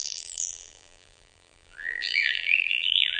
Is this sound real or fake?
fake